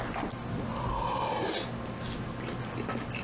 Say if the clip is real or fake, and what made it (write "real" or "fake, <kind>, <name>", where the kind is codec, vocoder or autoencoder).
real